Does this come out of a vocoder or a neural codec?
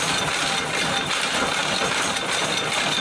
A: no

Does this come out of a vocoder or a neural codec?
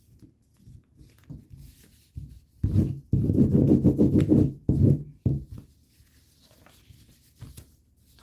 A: no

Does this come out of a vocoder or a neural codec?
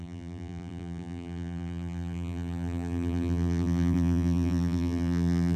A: yes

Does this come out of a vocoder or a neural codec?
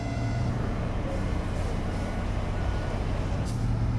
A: yes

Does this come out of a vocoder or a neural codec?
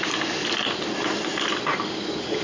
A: no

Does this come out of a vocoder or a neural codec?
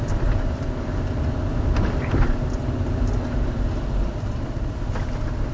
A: yes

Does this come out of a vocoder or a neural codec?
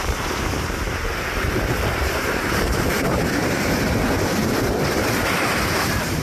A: yes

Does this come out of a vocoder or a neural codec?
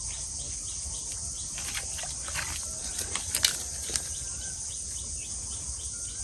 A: no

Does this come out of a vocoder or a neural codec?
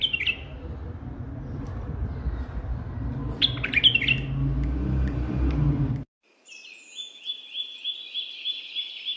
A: no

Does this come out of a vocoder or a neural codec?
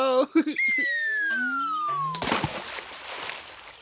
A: no